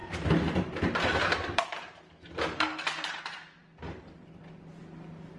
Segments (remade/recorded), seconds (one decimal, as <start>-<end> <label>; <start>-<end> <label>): 0.0-3.2 remade; 3.2-5.4 recorded